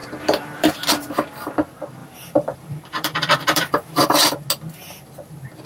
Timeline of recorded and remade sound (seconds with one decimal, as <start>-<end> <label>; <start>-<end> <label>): 0.0-0.9 remade; 0.9-2.0 recorded; 2.0-4.0 remade; 4.0-5.7 recorded